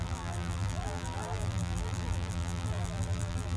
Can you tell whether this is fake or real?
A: fake